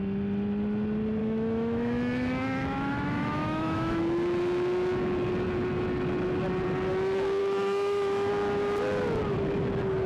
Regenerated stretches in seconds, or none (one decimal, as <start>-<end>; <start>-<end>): 1.2-4.0; 7.4-8.3